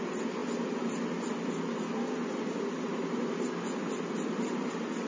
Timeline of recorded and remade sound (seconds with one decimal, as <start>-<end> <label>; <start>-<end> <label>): 0.0-5.1 recorded